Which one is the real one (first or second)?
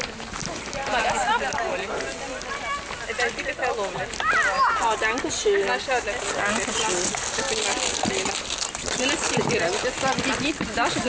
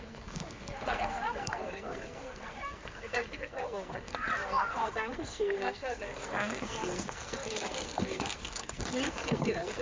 first